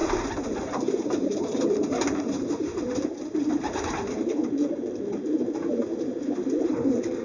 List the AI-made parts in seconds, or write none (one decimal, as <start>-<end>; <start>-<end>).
0.0-7.2